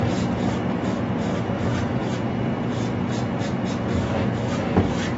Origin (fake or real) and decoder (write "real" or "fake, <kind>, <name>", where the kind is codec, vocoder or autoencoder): real